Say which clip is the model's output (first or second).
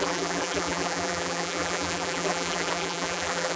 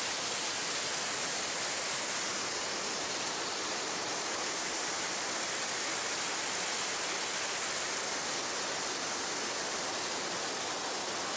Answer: first